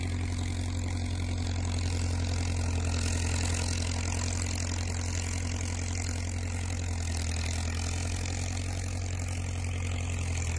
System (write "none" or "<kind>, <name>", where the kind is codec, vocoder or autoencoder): none